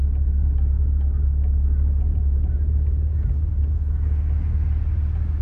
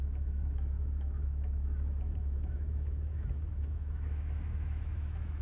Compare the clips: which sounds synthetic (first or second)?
second